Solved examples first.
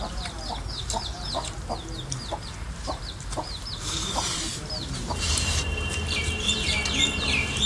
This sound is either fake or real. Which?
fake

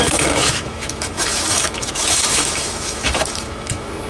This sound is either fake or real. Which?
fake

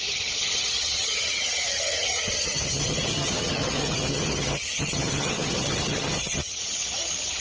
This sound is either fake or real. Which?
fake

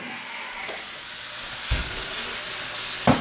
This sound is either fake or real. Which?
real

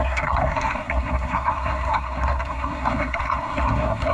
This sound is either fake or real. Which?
fake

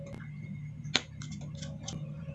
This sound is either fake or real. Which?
real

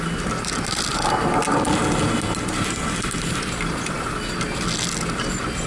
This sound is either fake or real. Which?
real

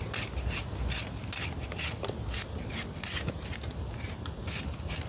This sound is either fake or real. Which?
real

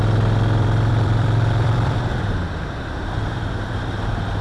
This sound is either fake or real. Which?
fake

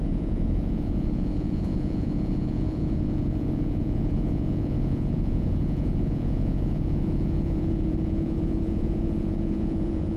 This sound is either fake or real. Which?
fake